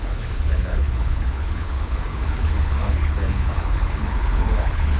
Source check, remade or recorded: remade